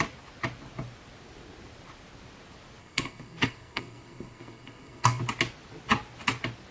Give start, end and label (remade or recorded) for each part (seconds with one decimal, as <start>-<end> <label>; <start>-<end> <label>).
0.0-2.8 recorded; 2.8-5.2 remade; 5.2-6.7 recorded